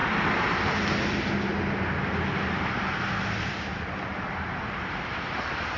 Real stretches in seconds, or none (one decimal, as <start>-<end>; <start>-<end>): 0.0-3.5; 4.1-4.6